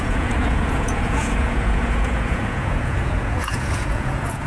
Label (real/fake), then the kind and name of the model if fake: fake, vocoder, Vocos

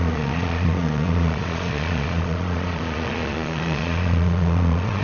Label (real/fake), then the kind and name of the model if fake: fake, vocoder, Vocos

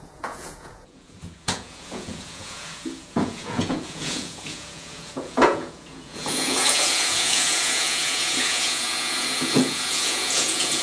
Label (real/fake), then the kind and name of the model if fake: fake, vocoder, Vocos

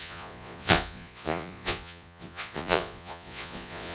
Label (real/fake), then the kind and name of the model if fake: fake, vocoder, Vocos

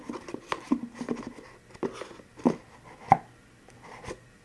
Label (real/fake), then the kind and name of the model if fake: real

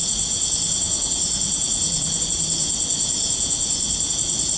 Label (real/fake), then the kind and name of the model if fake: fake, vocoder, Vocos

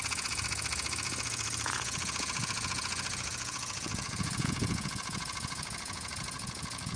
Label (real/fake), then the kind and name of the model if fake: fake, vocoder, Vocos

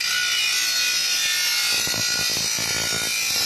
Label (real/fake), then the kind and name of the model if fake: real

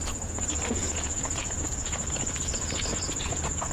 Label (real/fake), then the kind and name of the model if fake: fake, vocoder, Vocos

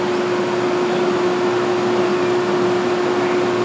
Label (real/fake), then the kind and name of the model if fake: real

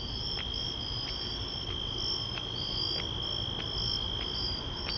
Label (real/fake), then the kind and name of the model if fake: real